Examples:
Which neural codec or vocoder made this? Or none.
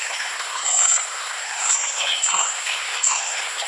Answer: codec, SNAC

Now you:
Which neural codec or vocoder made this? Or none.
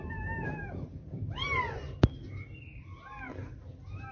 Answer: none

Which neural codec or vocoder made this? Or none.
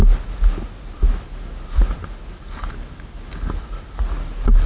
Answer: none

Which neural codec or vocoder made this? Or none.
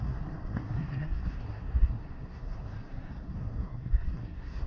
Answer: codec, SNAC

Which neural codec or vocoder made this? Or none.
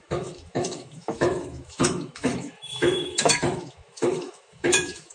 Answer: autoencoder, DAC-VAE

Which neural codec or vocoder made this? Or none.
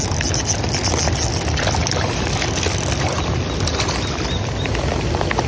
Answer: none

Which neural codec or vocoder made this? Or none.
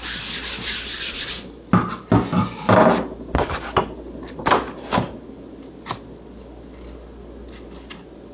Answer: none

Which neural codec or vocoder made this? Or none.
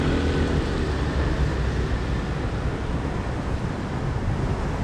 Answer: none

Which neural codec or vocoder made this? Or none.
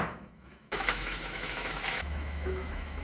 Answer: autoencoder, DAC-VAE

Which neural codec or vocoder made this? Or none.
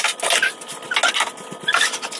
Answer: none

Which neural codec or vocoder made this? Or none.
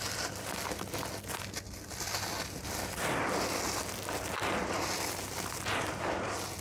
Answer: none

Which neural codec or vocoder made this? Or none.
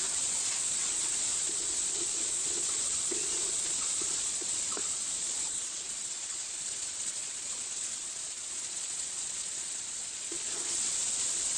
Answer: vocoder, Vocos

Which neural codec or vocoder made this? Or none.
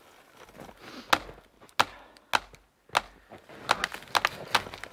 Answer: none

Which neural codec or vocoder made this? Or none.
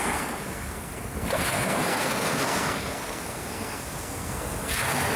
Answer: codec, SNAC